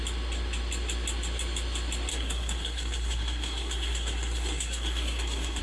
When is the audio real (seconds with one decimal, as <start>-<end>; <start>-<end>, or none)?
0.0-2.1

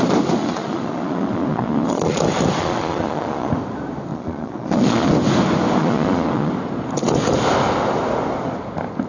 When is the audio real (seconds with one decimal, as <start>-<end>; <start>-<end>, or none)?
0.0-0.4; 2.2-2.6; 3.5-4.1; 5.1-5.8; 6.5-9.1

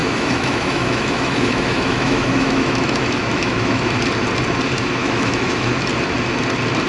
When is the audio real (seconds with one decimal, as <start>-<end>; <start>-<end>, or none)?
4.0-5.0; 5.7-6.9

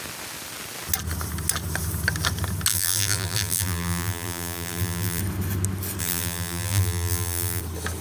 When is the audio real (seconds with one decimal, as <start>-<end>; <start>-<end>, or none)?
0.0-2.7; 5.2-6.0; 7.6-8.0

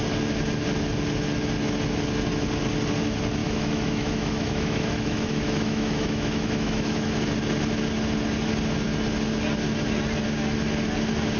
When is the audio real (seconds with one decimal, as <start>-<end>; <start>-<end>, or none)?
0.0-3.4; 7.3-11.4

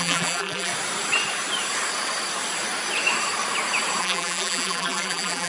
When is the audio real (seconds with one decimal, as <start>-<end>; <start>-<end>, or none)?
0.7-4.0